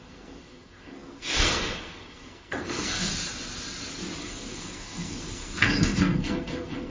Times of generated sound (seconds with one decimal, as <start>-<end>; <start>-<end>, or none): 0.0-3.1; 4.2-6.9